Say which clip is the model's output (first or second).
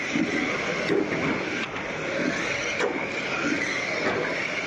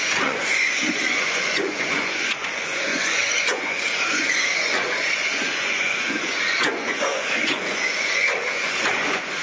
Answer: second